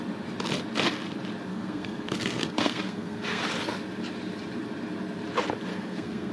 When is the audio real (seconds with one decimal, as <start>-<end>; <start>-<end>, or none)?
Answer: 0.0-1.5; 3.4-5.7